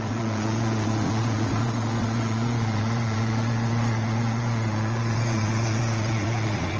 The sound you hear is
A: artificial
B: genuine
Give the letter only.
A